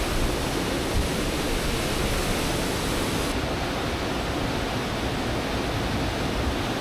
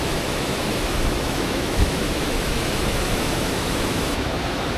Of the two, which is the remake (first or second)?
second